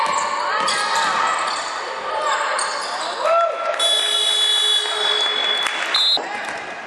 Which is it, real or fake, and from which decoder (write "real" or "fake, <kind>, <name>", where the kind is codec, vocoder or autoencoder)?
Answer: real